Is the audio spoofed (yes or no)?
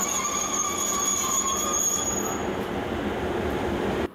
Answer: no